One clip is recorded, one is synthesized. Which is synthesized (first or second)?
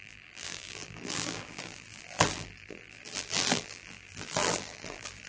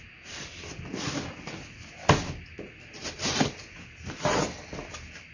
first